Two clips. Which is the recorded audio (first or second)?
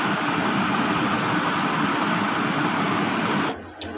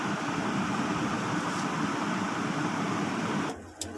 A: first